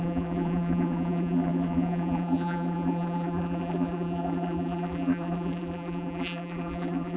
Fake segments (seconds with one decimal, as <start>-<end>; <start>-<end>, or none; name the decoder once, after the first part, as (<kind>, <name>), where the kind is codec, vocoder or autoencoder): 0.0-7.2 (vocoder, BigVGAN v2)